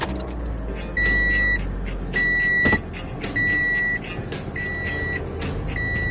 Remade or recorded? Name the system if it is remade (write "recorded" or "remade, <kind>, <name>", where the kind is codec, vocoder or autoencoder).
recorded